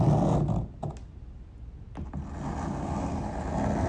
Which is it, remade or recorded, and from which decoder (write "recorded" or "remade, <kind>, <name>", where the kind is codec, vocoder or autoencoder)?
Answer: recorded